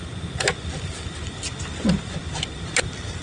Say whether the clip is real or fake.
real